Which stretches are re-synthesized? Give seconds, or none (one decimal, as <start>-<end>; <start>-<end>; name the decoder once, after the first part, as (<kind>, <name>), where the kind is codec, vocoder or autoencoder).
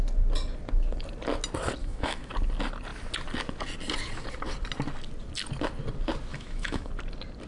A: 1.8-2.3 (autoencoder, DAC-VAE); 6.3-6.9